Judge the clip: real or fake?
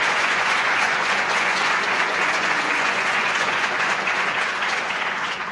fake